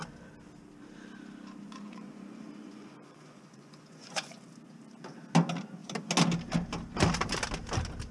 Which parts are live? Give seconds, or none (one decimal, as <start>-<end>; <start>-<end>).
0.0-1.6; 4.4-8.1